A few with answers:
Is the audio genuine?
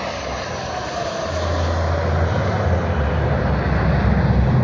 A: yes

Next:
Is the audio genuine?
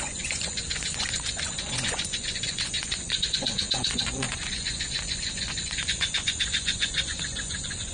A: no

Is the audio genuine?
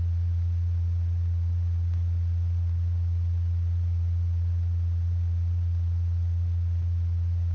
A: yes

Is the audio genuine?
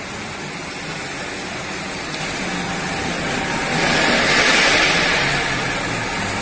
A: yes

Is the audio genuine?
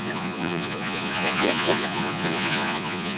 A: no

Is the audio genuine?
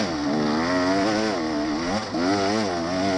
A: yes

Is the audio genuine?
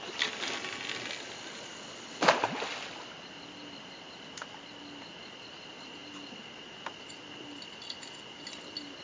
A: yes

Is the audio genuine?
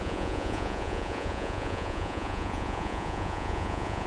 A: no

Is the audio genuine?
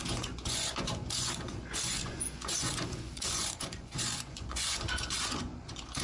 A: no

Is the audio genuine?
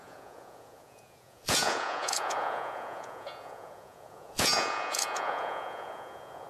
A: no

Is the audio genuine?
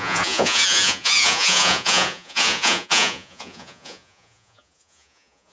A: no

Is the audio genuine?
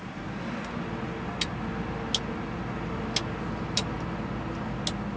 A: yes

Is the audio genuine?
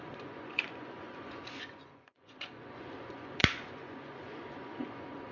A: no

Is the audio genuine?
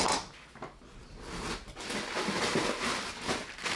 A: yes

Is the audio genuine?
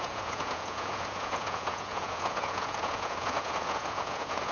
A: no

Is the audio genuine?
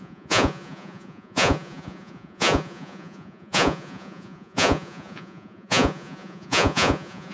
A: no